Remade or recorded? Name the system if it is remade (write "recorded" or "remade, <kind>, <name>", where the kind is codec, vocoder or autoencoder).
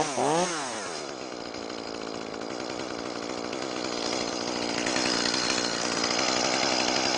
recorded